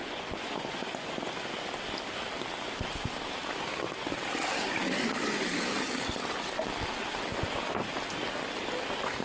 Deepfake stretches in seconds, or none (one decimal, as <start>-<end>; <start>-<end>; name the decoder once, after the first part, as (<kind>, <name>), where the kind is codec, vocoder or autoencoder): 0.0-1.3 (vocoder, Vocos)